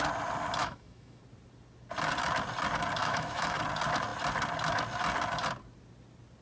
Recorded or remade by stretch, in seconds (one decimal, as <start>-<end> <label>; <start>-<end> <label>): 0.0-0.6 recorded; 0.6-1.2 remade; 1.2-3.0 recorded; 3.0-3.6 remade; 3.6-6.4 recorded